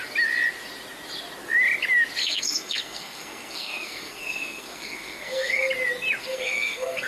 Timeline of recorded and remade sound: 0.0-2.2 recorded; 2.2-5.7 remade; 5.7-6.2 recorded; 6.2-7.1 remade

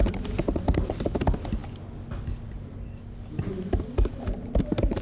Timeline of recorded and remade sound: 0.0-5.0 recorded

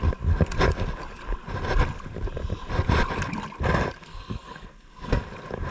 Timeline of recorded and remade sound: 0.0-4.0 recorded; 4.0-5.3 remade; 5.3-5.7 recorded

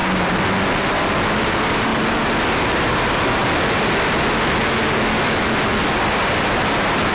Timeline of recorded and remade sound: 0.0-7.1 recorded

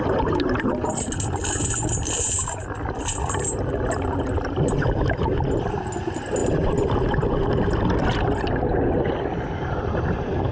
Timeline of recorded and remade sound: 0.0-10.5 recorded

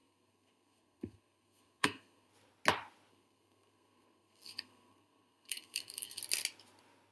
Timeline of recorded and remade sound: 0.0-2.3 remade; 2.3-3.1 recorded; 3.1-6.2 remade; 6.2-7.1 recorded

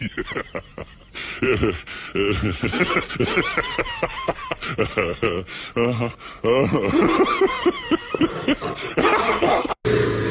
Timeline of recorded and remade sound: 0.0-9.2 recorded; 9.2-9.8 remade; 9.8-10.3 recorded

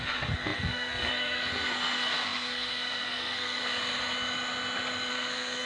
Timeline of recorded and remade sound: 0.0-3.6 remade; 3.6-5.1 recorded; 5.1-5.7 remade